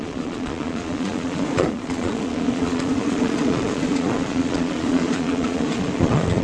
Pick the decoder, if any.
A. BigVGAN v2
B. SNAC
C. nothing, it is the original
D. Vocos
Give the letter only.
D